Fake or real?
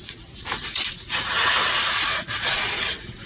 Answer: fake